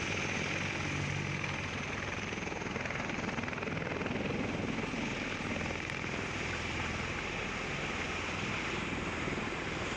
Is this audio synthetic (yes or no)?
no